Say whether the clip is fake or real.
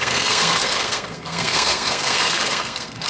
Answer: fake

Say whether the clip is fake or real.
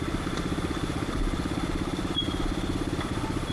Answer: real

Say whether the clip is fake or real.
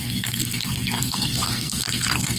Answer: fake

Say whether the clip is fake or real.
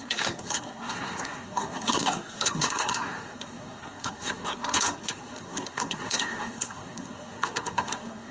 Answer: fake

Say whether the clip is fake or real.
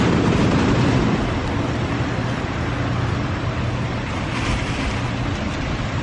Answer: real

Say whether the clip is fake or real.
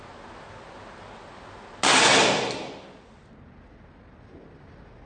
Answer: real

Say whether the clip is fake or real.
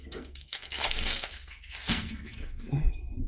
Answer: fake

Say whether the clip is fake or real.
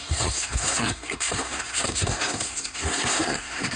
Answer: fake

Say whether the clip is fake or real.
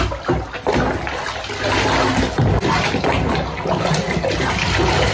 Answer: real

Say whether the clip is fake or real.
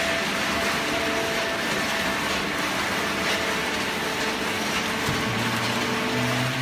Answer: real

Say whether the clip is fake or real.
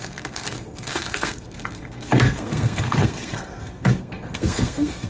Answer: fake